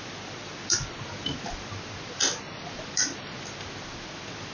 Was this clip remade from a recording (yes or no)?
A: no